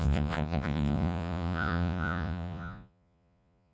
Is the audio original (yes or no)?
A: no